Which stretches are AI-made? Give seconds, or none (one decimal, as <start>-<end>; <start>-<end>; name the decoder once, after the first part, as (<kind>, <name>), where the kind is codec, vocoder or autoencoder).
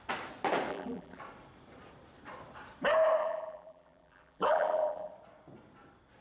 0.7-1.2 (vocoder, BigVGAN v2); 3.2-5.1